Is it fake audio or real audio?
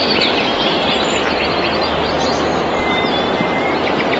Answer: fake